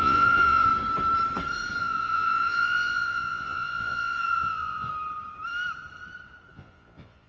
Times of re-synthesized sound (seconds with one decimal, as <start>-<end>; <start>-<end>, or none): 0.0-0.7; 1.8-4.9; 6.5-7.3